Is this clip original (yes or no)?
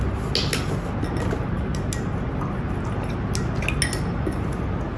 yes